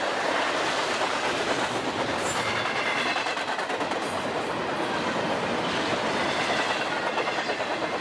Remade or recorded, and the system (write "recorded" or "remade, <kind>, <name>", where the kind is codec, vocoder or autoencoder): recorded